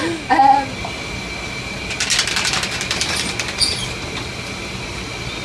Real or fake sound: real